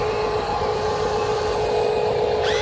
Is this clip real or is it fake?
real